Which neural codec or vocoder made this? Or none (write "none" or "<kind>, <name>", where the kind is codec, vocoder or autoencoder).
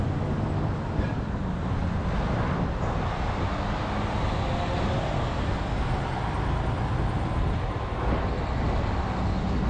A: none